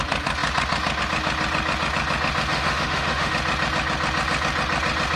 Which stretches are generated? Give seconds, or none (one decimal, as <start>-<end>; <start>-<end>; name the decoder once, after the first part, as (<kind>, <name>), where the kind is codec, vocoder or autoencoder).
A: 2.5-3.3 (autoencoder, DAC-VAE)